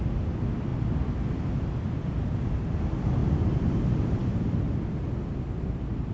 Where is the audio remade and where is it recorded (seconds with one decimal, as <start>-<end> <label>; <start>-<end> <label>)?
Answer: 0.0-6.1 recorded